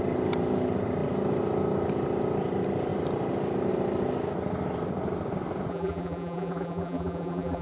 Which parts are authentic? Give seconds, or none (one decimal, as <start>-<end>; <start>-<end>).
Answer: 0.0-5.7